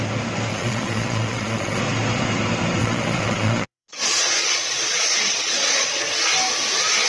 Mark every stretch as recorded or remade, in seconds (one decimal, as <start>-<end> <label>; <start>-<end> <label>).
0.0-0.5 recorded; 0.5-1.8 remade; 1.8-2.8 recorded; 2.8-6.0 remade; 6.0-7.1 recorded